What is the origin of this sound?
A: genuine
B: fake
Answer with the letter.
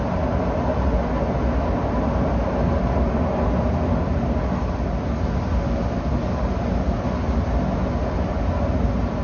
A